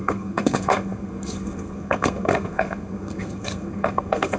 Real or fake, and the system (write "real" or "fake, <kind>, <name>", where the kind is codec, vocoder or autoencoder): fake, codec, SNAC